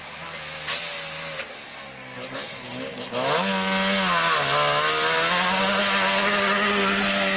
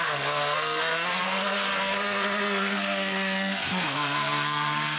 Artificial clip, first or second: second